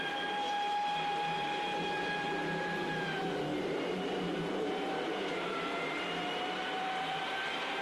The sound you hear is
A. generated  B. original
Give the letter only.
A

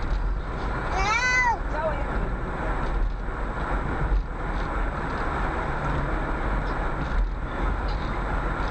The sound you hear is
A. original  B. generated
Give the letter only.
A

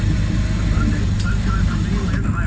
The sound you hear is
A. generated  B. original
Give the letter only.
B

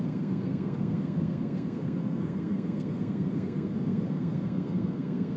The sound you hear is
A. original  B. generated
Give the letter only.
B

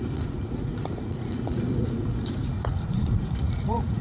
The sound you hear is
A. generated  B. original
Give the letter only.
A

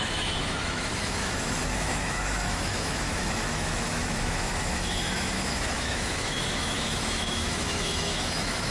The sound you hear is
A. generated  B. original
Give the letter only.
A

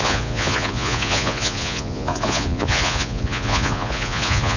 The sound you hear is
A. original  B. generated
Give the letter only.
B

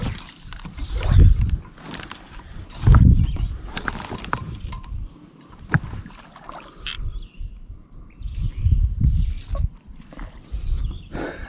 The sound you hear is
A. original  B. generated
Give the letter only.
B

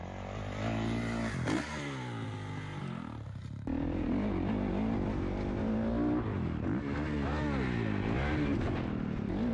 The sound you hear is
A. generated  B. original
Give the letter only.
B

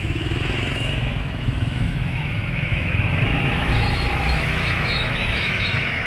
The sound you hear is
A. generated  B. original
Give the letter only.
A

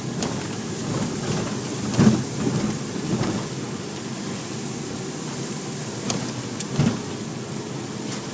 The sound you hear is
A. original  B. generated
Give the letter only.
A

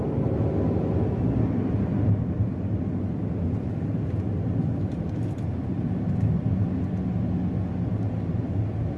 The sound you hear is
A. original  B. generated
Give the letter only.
A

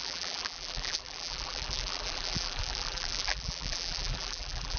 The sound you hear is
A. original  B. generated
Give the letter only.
B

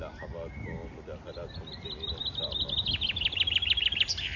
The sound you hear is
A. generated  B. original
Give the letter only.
B